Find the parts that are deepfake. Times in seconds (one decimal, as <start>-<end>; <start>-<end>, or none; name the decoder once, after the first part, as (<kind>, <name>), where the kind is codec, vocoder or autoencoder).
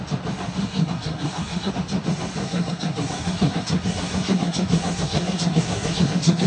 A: 0.6-1.7 (codec, SNAC); 2.4-6.5